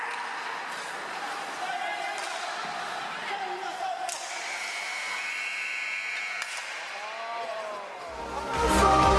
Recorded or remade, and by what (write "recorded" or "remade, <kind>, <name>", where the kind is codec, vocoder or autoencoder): recorded